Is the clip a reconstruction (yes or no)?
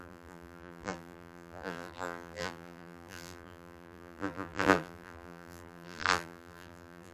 yes